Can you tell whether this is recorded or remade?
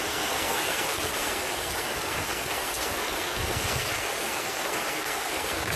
remade